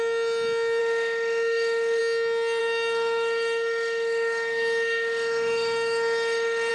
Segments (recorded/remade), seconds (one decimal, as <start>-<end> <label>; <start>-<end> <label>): 0.0-0.8 recorded; 0.8-2.0 remade; 2.0-2.6 recorded; 2.6-6.7 remade